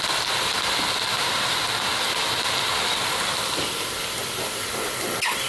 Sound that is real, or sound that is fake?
real